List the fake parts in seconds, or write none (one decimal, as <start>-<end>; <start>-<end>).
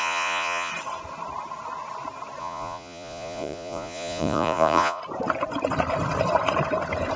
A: 0.0-0.7; 2.4-5.0